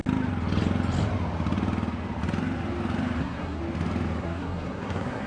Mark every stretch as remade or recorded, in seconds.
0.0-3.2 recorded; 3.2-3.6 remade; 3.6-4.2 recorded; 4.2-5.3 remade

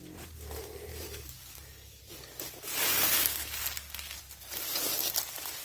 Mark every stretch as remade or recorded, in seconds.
0.0-0.9 recorded; 0.9-2.0 remade; 2.0-2.9 recorded; 2.9-4.2 remade; 4.2-5.6 recorded

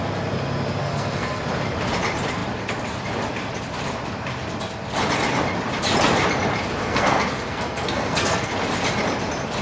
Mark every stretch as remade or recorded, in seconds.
0.0-0.8 recorded; 0.8-1.4 remade; 1.4-6.8 recorded; 6.8-8.5 remade; 8.5-9.6 recorded